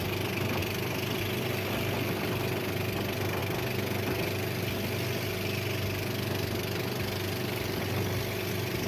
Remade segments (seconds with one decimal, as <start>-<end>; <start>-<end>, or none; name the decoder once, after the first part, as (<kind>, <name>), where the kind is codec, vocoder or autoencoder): none